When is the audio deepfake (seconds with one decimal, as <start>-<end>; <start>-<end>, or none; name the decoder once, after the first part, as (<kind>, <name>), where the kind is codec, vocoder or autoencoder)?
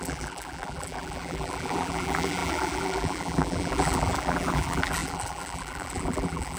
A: 0.0-6.6 (vocoder, BigVGAN v2)